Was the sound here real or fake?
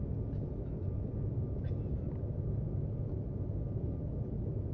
real